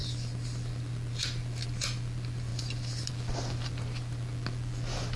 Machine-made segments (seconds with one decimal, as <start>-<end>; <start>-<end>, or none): none